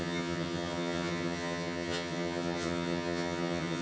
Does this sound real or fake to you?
fake